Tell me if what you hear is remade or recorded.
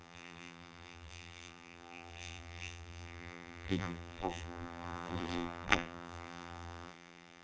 remade